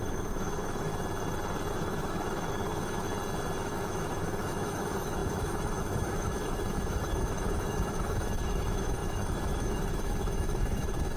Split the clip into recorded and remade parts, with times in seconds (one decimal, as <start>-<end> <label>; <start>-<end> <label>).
0.0-0.9 remade; 0.9-1.7 recorded; 1.7-3.1 remade; 3.1-3.6 recorded; 3.6-11.2 remade